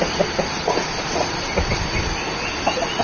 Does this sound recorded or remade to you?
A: recorded